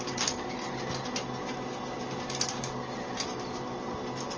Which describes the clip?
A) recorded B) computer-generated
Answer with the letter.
A